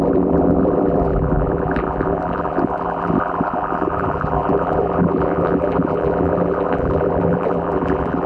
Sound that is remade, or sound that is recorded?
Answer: remade